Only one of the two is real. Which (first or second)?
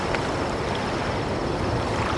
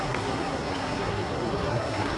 first